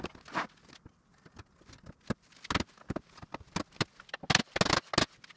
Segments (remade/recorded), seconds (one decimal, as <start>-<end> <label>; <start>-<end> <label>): 0.0-5.4 recorded